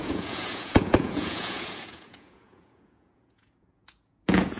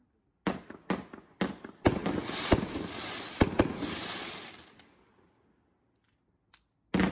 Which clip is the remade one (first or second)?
first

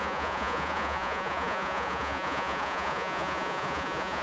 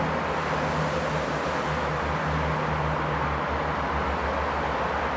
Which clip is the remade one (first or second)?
first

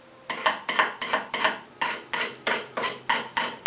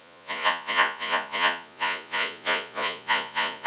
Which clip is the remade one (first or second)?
second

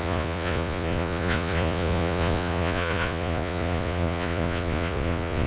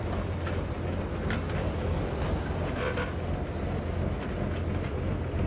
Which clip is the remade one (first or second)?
first